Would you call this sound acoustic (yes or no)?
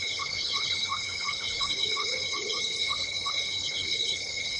no